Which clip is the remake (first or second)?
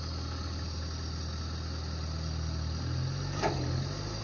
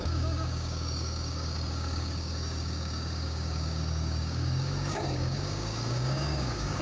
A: second